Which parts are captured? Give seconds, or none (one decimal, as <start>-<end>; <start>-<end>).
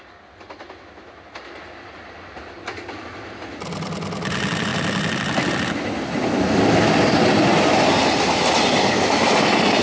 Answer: 0.0-7.5; 8.6-9.8